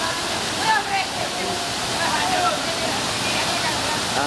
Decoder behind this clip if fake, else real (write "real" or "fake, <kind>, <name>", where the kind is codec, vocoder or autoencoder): real